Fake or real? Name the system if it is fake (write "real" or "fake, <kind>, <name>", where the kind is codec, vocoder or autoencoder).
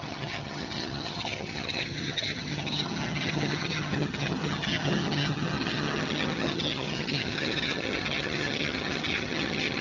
fake, vocoder, HiFi-GAN